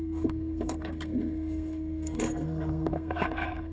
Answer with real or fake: fake